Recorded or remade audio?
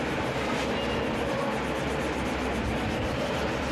recorded